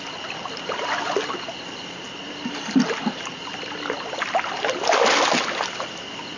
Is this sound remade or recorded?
recorded